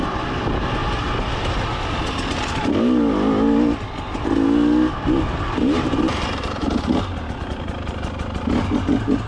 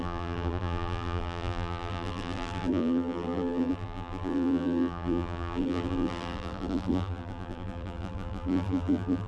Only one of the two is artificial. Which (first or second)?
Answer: second